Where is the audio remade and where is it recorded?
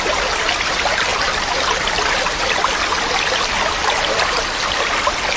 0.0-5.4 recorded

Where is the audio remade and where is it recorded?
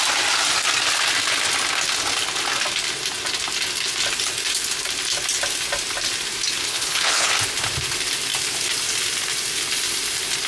0.0-6.6 recorded; 6.6-7.3 remade; 7.3-10.5 recorded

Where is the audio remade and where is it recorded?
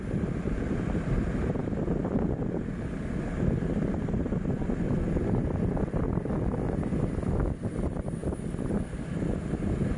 0.0-10.0 recorded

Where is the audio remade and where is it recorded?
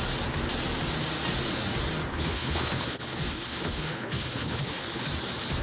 0.0-2.1 recorded; 2.1-5.1 remade; 5.1-5.6 recorded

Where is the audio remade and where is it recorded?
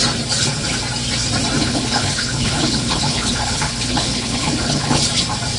0.0-1.6 recorded; 1.6-5.0 remade; 5.0-5.6 recorded